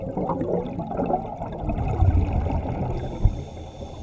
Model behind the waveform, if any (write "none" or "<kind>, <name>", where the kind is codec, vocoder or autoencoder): none